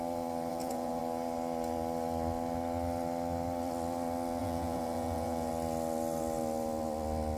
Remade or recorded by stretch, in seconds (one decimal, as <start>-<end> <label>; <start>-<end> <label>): 0.0-0.5 recorded; 0.5-1.0 remade; 1.0-4.4 recorded; 4.4-5.5 remade; 5.5-7.4 recorded